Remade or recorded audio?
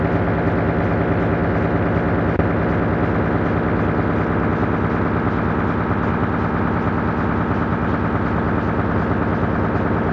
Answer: recorded